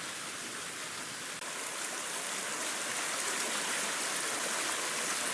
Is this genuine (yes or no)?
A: yes